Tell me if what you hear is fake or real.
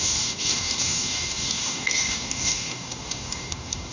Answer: fake